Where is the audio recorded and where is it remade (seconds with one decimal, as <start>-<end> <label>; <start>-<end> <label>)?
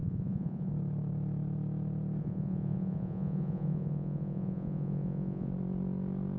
0.0-0.7 remade; 0.7-2.2 recorded; 2.2-5.5 remade; 5.5-6.4 recorded